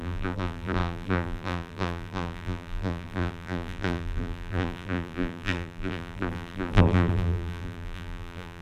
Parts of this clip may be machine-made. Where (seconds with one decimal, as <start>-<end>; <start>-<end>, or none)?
0.0-8.6